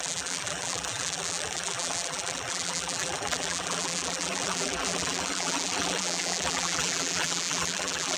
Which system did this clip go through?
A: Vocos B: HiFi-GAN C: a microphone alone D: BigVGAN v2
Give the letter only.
D